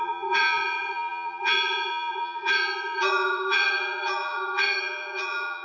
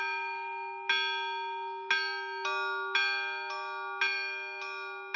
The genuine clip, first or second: second